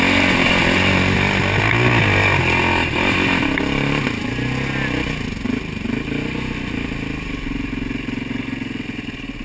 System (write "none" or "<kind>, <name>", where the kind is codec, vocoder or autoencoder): none